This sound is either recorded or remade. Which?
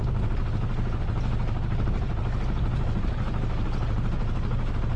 recorded